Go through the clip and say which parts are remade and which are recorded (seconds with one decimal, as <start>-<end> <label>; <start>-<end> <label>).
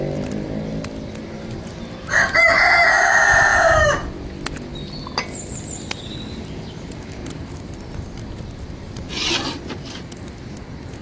0.0-1.2 recorded; 1.2-1.7 remade; 1.7-7.2 recorded; 7.2-9.1 remade; 9.1-11.0 recorded